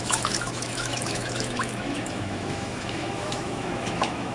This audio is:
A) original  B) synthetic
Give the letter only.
B